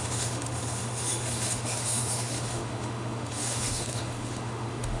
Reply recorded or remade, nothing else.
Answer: remade